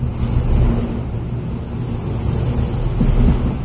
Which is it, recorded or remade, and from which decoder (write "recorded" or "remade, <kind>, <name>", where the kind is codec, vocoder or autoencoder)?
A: recorded